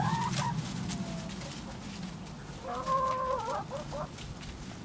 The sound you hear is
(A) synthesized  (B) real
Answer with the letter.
B